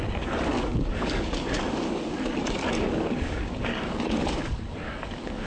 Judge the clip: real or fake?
fake